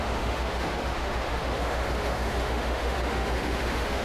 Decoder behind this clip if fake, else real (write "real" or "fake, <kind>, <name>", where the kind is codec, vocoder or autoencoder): fake, autoencoder, DAC-VAE